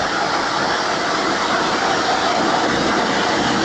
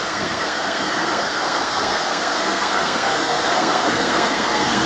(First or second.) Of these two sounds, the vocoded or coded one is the second